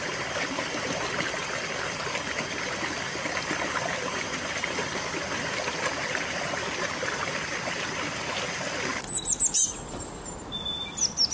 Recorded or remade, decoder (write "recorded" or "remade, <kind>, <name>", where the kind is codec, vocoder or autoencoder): remade, vocoder, BigVGAN v2